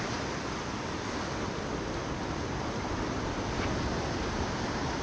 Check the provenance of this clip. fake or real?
real